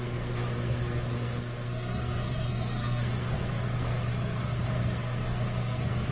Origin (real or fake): fake